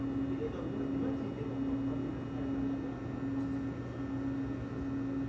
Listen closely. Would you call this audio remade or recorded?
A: recorded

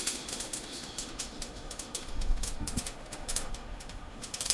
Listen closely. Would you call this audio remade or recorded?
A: remade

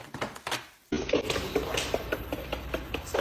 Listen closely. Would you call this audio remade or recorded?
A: recorded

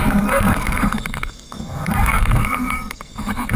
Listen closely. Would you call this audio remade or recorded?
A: remade